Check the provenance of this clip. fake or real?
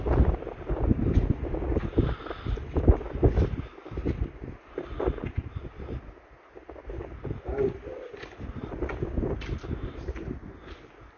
real